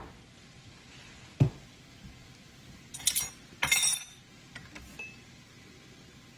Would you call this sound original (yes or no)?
yes